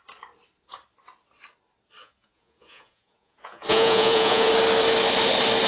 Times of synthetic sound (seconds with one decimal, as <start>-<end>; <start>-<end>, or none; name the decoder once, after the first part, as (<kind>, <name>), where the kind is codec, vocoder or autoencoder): 2.0-4.5 (vocoder, Vocos)